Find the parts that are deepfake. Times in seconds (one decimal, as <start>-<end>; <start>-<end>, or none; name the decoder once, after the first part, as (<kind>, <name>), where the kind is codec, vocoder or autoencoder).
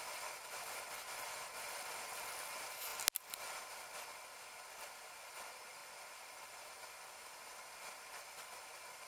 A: none